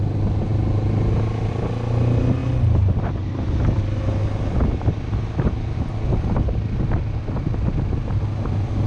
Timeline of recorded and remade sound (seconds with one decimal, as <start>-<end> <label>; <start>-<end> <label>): 0.0-8.9 recorded